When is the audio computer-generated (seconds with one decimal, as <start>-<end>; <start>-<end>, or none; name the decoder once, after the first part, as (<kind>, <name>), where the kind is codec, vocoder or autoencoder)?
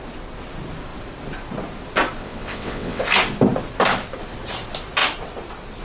2.2-3.0 (vocoder, WaveNeXt)